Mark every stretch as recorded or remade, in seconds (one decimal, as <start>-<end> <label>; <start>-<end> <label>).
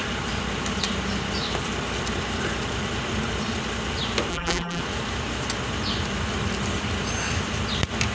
0.0-4.3 recorded; 4.3-4.8 remade; 4.8-8.1 recorded